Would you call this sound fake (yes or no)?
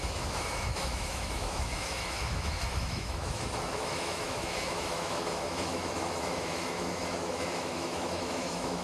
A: yes